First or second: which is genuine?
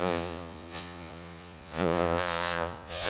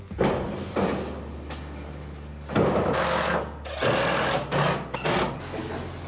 second